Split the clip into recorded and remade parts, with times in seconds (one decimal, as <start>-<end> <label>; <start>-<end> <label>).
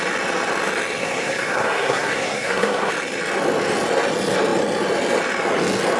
0.0-1.0 recorded; 1.0-2.9 remade; 2.9-6.0 recorded